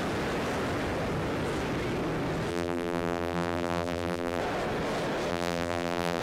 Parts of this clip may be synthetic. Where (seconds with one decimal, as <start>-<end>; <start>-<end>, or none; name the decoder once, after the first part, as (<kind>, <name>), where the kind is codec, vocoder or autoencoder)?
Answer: 2.5-4.4 (vocoder, BigVGAN v2); 5.3-6.2